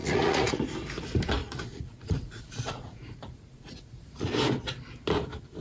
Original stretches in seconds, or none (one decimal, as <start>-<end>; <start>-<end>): 0.6-1.4; 4.3-5.6